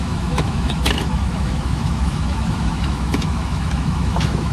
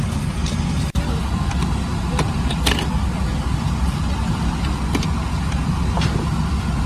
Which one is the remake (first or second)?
first